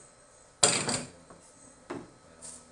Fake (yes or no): no